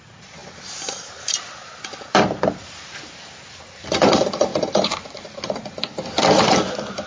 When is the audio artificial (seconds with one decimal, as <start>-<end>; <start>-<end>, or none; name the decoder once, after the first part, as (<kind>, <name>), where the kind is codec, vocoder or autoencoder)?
0.0-4.5 (vocoder, BigVGAN v2)

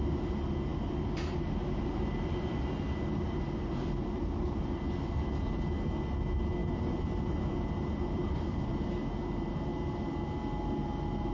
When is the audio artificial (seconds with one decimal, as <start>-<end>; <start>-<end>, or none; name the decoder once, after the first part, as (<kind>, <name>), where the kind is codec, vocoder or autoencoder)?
0.7-5.2 (vocoder, BigVGAN v2); 6.6-9.0

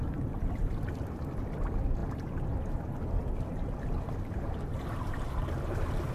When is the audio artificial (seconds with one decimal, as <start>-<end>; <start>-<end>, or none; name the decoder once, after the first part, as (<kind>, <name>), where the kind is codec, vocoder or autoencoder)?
none

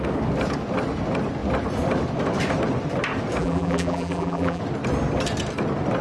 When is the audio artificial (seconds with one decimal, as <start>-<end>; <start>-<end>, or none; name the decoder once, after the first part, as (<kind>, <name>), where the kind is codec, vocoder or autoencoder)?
3.4-4.6 (vocoder, BigVGAN v2)

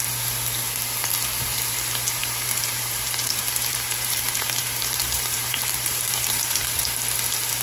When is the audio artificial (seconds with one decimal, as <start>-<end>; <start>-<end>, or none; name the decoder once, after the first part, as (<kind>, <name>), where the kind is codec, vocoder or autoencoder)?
2.2-6.8 (vocoder, BigVGAN v2)

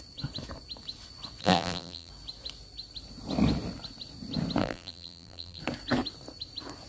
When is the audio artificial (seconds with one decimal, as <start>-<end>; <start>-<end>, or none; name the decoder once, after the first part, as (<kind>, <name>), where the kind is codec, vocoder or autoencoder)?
1.4-2.1 (vocoder, BigVGAN v2); 4.6-5.6

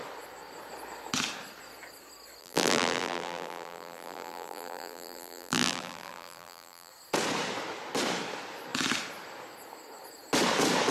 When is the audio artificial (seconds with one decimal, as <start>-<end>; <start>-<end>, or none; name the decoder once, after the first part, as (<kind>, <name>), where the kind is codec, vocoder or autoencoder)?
2.4-6.9 (vocoder, BigVGAN v2)

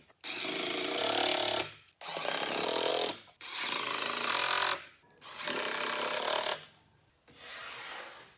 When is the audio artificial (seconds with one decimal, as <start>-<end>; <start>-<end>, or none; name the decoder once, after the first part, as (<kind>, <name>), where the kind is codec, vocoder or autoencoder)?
none